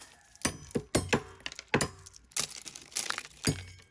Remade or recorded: recorded